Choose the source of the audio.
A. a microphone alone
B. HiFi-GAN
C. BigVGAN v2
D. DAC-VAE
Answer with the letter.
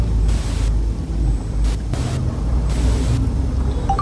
A